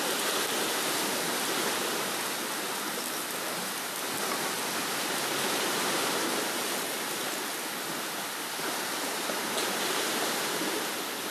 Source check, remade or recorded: recorded